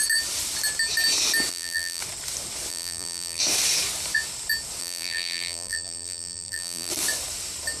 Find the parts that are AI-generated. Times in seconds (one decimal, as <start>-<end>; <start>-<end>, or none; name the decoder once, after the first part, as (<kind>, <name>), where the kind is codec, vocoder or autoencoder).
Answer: 1.5-2.0 (vocoder, BigVGAN v2); 2.7-3.4; 4.8-6.9